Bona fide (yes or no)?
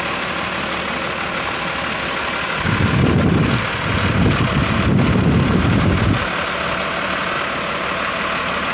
yes